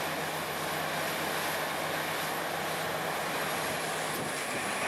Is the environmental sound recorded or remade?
recorded